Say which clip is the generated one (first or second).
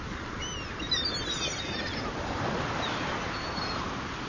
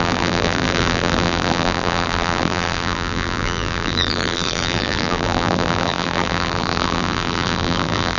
second